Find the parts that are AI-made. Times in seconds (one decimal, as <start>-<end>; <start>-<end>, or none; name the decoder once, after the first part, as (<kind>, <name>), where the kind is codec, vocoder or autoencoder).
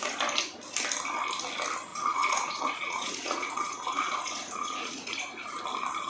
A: 1.9-5.6 (vocoder, Vocos)